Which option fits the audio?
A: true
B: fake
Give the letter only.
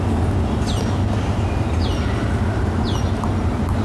A